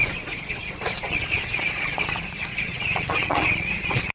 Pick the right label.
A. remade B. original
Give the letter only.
A